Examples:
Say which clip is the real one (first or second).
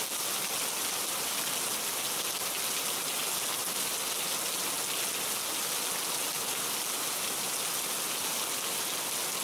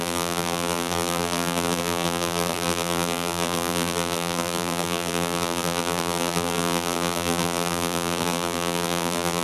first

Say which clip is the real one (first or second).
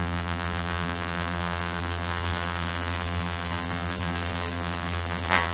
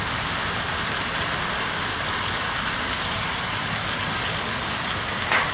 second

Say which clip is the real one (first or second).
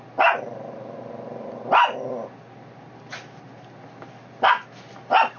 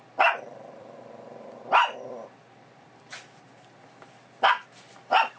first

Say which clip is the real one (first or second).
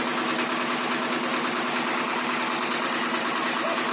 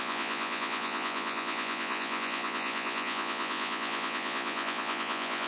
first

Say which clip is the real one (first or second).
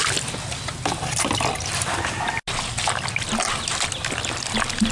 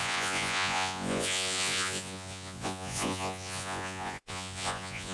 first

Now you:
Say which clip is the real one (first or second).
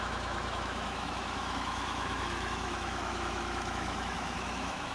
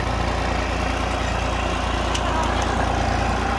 second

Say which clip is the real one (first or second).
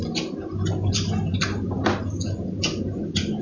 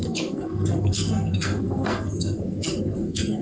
first